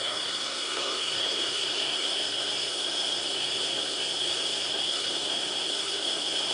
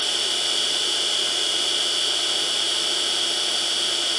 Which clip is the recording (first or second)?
second